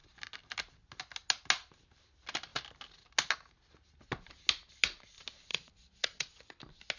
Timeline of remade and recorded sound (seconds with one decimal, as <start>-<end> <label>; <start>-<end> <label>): 0.0-5.5 recorded; 5.5-6.6 remade; 6.6-7.0 recorded